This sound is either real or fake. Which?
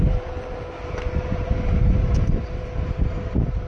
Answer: fake